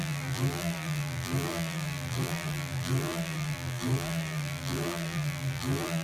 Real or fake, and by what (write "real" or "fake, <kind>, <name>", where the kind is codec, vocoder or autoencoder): fake, vocoder, BigVGAN v2